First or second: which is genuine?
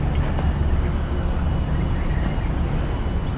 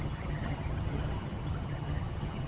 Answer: first